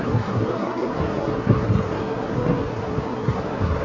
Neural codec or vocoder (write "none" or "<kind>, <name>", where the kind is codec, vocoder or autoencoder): codec, SNAC